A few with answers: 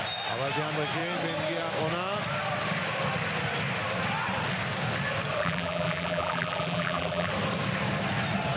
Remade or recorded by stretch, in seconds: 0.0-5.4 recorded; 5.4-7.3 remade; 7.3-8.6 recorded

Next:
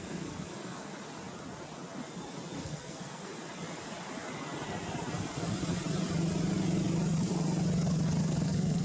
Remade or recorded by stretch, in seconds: 0.0-0.9 remade; 0.9-2.6 recorded; 2.6-3.3 remade; 3.3-8.2 recorded; 8.2-8.8 remade

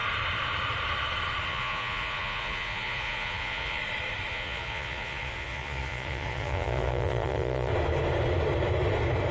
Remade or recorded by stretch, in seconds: 0.0-1.5 recorded; 1.5-3.8 remade; 3.8-4.3 recorded; 4.3-7.7 remade; 7.7-9.3 recorded

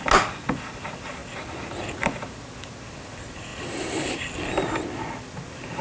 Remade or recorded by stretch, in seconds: 0.0-5.8 recorded